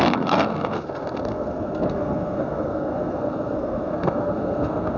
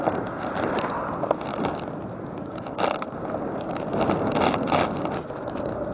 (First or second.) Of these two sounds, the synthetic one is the first